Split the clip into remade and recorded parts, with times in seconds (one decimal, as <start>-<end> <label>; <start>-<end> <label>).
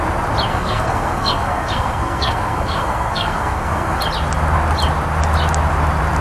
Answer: 0.0-0.5 recorded; 0.5-4.0 remade; 4.0-6.2 recorded